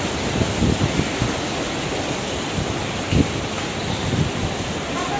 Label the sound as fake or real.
real